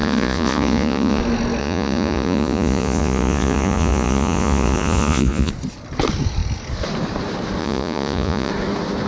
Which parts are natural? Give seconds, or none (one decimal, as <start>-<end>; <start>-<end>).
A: 1.2-1.6; 5.5-7.6; 8.5-9.1